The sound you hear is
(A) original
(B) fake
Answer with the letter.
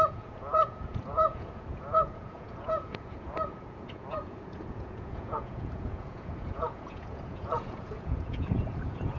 B